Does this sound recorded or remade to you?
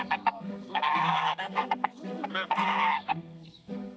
remade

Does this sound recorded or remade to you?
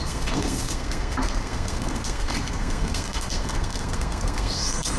remade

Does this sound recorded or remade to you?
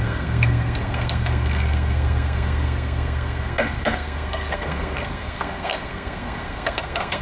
remade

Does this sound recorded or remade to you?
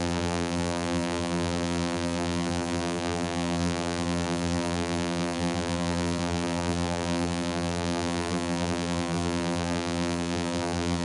remade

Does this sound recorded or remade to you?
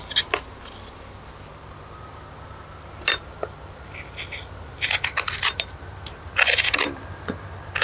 recorded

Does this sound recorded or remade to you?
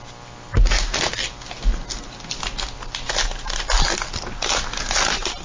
recorded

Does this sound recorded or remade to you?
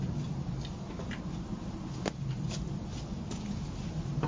recorded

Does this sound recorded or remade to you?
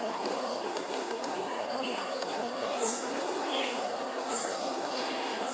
remade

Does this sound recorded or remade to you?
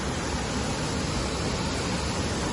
recorded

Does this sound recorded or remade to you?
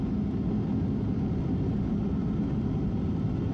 recorded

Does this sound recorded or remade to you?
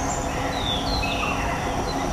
recorded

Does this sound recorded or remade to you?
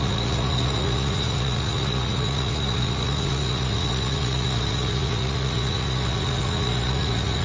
remade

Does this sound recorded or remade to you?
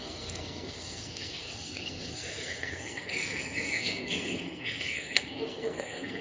remade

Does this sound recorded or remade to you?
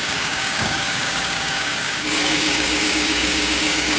remade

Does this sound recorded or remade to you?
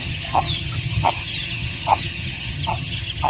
remade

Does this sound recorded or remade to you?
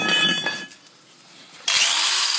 recorded